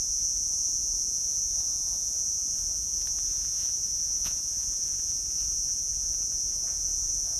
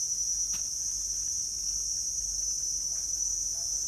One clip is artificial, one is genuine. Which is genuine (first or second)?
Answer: second